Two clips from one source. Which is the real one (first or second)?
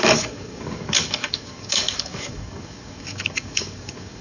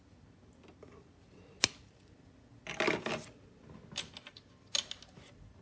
second